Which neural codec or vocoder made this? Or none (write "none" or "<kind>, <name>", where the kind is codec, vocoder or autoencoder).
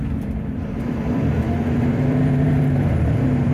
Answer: vocoder, BigVGAN v2